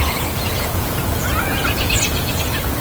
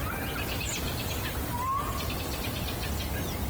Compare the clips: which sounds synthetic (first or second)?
first